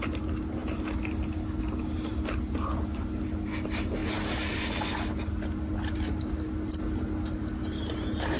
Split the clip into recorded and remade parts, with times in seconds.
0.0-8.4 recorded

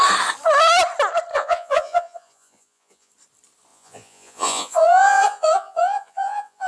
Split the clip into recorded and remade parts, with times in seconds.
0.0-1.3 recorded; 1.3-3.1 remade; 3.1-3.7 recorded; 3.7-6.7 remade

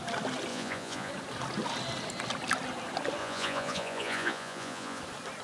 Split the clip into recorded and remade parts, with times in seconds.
0.0-0.5 recorded; 0.5-1.1 remade; 1.1-3.2 recorded; 3.2-5.0 remade; 5.0-5.4 recorded

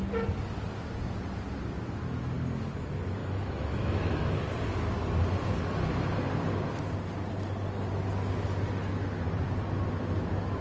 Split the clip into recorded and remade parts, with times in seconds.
0.0-3.2 recorded; 3.2-4.4 remade; 4.4-10.6 recorded